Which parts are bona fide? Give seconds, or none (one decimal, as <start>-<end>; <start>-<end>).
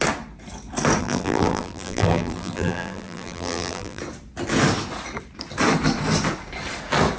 0.0-1.0; 4.0-7.2